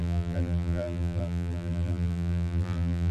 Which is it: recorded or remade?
remade